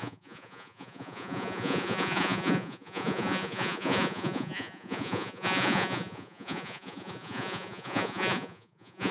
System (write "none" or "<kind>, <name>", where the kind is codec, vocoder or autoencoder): vocoder, Vocos